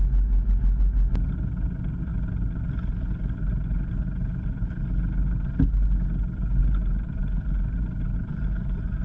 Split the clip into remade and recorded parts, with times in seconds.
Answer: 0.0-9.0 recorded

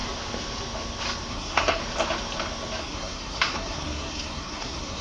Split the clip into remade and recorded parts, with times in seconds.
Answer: 0.0-1.3 recorded; 1.3-1.8 remade; 1.8-2.8 recorded; 2.8-5.0 remade

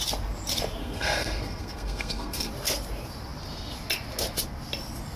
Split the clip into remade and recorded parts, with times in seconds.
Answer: 0.0-0.8 recorded; 0.8-2.5 remade; 2.5-5.2 recorded

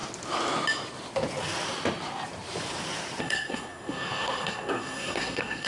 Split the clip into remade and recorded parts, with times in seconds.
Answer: 0.0-3.2 recorded; 3.2-5.7 remade

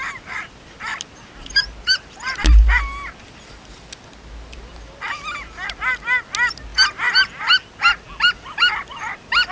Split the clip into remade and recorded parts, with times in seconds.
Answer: 0.0-9.5 recorded